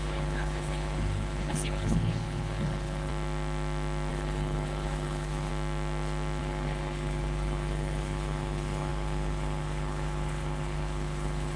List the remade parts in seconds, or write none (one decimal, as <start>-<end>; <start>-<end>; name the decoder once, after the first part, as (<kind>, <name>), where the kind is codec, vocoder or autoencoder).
0.0-3.1 (codec, HILCodec); 4.1-5.5; 6.4-11.6